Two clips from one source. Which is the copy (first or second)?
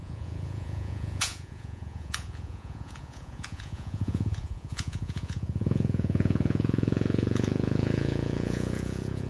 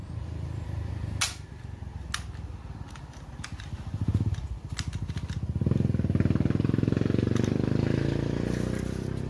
first